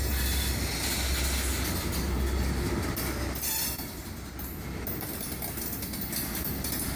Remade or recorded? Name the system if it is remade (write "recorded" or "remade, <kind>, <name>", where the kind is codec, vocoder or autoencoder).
recorded